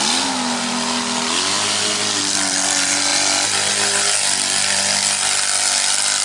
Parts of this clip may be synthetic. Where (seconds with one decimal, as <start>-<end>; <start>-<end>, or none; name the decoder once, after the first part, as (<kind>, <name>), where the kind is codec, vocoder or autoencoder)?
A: none